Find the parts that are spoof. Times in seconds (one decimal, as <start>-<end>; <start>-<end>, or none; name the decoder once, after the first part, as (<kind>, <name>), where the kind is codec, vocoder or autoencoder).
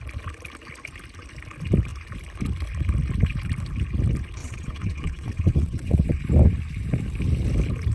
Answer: 4.4-6.2 (vocoder, WaveNeXt)